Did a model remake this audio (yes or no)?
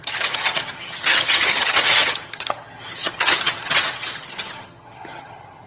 yes